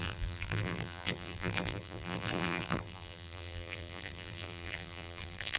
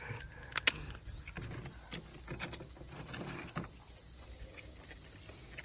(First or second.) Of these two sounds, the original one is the second